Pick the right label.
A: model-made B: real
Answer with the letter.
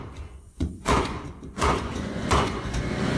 A